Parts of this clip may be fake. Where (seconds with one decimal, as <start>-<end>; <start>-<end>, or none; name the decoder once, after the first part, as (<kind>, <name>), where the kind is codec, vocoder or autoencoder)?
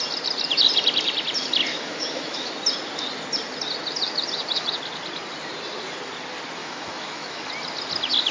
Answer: 1.7-2.5 (autoencoder, DAC-VAE); 6.6-7.5